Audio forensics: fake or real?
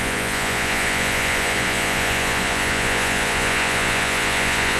fake